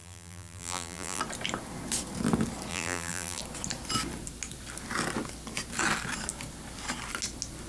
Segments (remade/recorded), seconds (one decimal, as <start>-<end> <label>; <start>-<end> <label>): 0.0-1.2 remade; 1.2-2.7 recorded; 2.7-3.4 remade; 3.4-7.7 recorded